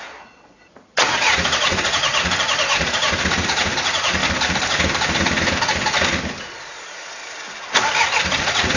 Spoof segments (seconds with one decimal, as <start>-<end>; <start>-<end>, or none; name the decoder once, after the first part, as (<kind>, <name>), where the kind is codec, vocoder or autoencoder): 0.0-4.2 (vocoder, Vocos); 6.6-7.2; 8.4-8.8